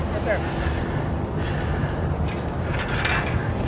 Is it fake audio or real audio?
real